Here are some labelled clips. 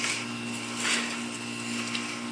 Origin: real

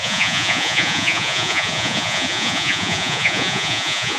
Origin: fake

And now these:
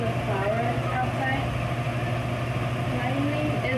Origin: real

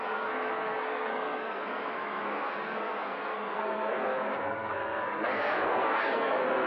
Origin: fake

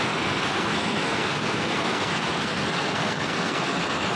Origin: fake